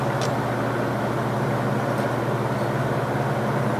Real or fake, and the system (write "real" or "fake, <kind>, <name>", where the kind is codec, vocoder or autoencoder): real